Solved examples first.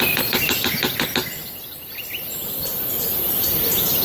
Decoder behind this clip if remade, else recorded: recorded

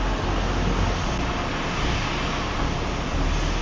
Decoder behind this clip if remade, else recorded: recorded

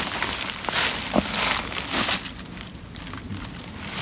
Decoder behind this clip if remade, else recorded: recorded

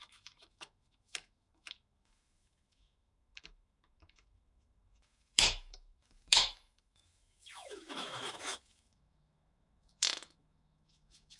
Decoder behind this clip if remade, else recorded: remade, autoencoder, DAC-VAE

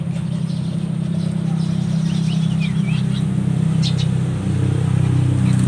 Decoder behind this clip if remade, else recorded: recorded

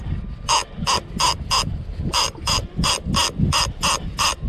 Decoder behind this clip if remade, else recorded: recorded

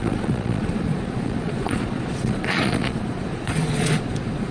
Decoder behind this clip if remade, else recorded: remade, vocoder, Vocos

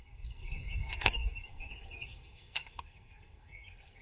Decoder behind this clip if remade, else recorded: remade, codec, SNAC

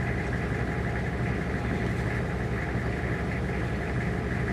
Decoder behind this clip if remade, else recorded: recorded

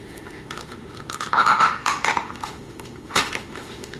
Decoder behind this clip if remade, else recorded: remade, autoencoder, DAC-VAE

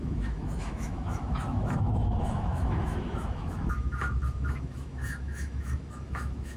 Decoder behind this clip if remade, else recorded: remade, autoencoder, DAC-VAE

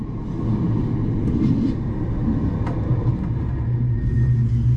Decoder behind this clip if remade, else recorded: recorded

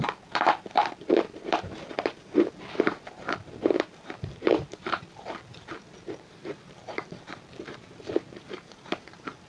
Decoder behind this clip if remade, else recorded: remade, vocoder, BigVGAN v2